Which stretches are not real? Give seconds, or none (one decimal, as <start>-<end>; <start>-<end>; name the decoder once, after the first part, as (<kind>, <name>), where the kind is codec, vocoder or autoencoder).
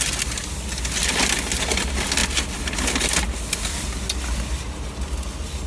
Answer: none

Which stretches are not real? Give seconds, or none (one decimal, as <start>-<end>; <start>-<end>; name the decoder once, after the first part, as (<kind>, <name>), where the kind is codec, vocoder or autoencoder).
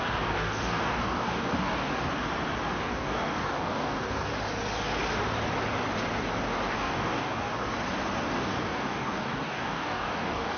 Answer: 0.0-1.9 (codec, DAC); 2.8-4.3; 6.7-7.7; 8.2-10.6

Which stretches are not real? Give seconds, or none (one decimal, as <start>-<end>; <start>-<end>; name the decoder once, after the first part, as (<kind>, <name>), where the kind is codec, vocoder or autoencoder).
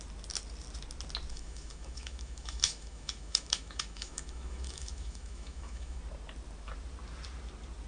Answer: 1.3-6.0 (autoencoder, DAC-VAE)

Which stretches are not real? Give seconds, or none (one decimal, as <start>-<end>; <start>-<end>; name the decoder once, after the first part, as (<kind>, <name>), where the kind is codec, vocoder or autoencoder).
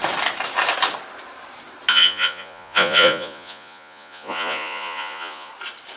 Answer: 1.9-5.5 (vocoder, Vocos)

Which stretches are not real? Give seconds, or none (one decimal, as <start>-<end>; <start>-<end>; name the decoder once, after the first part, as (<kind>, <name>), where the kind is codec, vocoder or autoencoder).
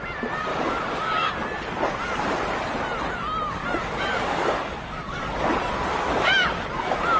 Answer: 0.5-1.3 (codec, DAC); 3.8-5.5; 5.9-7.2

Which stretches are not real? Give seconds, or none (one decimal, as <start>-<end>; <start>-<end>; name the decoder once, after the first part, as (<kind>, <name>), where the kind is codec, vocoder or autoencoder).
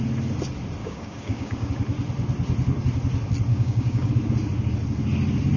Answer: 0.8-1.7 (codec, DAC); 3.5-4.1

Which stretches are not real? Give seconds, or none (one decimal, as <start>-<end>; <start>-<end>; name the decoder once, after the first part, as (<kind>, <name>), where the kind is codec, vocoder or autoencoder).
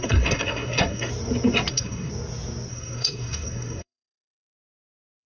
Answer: 0.0-1.1 (codec, SNAC); 1.7-2.1; 2.7-5.3